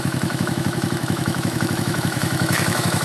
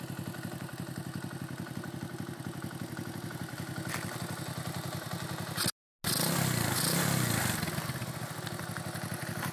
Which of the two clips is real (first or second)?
second